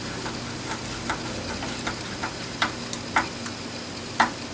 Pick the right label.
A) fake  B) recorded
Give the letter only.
B